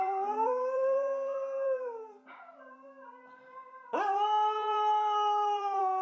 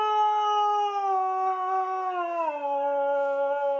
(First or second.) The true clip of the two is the second